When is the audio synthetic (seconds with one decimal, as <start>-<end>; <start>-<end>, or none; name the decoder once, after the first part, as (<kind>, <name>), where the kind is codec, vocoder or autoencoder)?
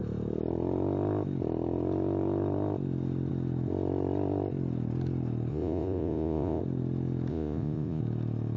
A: 5.5-6.6 (vocoder, Vocos); 7.3-8.0